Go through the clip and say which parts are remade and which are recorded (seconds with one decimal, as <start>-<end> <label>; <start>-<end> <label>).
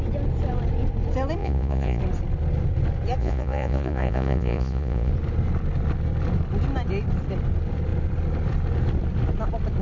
0.0-1.4 recorded; 1.4-2.0 remade; 2.0-3.2 recorded; 3.2-5.1 remade; 5.1-9.8 recorded